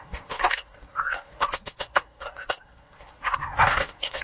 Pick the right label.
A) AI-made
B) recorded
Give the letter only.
A